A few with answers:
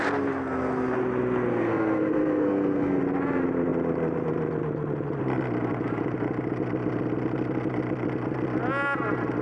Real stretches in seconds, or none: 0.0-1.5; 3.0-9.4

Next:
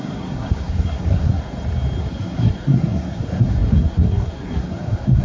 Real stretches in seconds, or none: 1.4-2.0

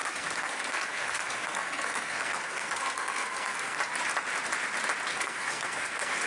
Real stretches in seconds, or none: 3.8-5.1